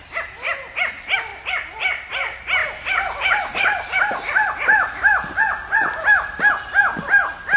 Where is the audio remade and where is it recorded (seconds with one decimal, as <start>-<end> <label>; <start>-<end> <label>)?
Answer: 0.0-1.3 recorded; 1.3-2.1 remade; 2.1-2.6 recorded; 2.6-6.5 remade; 6.5-7.6 recorded